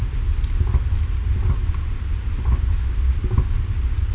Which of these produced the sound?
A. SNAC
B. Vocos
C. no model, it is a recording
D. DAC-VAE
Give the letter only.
C